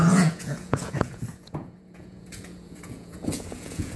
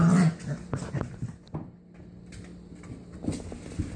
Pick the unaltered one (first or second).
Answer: second